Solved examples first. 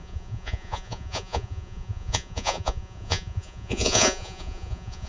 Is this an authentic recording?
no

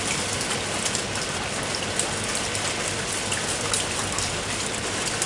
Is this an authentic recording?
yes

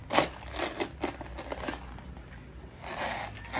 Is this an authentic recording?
yes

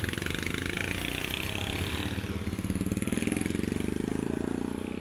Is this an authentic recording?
yes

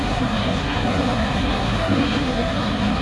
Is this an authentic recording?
no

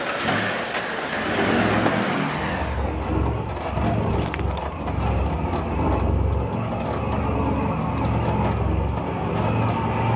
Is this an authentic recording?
yes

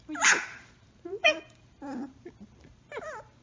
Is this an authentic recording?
no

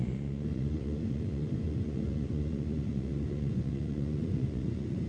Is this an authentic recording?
no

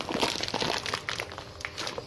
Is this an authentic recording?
yes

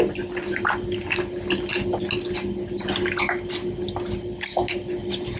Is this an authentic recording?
yes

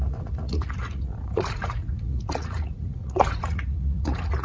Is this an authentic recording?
no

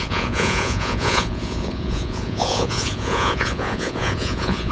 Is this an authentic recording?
no